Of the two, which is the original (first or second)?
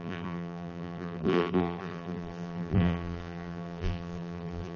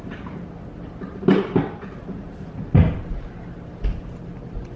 second